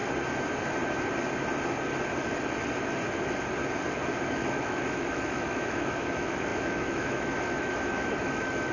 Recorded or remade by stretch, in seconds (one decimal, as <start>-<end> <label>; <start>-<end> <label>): 0.0-4.3 recorded; 4.3-8.7 remade